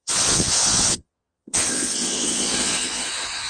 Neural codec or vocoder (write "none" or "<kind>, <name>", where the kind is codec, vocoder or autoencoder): vocoder, Vocos